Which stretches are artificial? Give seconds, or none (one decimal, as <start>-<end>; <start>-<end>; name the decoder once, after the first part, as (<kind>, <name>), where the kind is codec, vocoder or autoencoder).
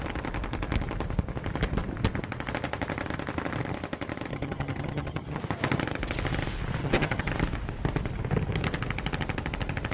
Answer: 4.3-5.4 (vocoder, HiFi-GAN); 6.8-7.3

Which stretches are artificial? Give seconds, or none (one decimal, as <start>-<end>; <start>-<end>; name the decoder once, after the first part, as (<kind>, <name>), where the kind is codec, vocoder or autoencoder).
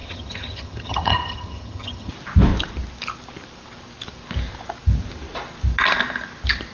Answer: 0.0-2.1 (vocoder, HiFi-GAN)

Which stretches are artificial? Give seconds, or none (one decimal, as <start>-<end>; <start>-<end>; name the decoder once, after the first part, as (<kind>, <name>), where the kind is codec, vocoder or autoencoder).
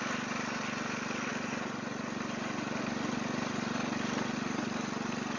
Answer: none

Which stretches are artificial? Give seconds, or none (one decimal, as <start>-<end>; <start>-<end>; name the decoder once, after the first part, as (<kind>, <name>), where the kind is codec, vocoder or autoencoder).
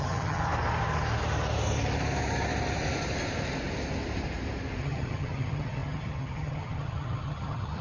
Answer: 0.0-0.4 (vocoder, HiFi-GAN); 4.8-7.8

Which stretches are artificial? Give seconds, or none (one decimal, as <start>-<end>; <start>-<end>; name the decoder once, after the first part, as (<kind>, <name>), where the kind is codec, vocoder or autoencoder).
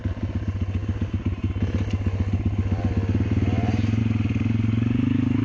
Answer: none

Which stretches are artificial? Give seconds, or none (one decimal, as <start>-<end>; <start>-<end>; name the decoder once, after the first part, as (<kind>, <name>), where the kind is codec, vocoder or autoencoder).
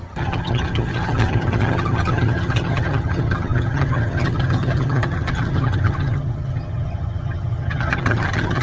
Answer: 0.0-8.6 (vocoder, HiFi-GAN)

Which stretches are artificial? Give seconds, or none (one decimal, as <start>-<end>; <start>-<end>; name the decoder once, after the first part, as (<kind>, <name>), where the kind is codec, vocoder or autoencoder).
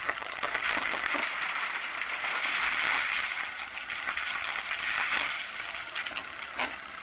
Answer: 0.0-1.2 (vocoder, HiFi-GAN); 2.6-7.0